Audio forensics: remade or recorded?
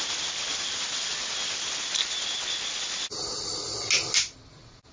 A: recorded